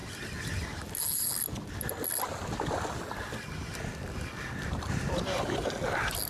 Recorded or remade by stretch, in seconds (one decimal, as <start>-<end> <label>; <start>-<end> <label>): 0.0-6.3 recorded